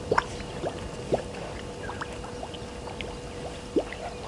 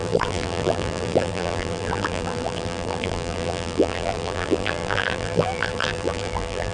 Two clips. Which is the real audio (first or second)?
first